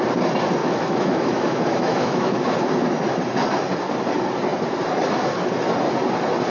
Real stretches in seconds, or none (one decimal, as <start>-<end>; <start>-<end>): 0.0-0.6; 2.4-6.5